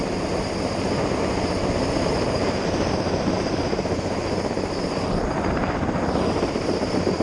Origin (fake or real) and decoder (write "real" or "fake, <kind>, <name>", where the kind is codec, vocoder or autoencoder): fake, vocoder, BigVGAN v2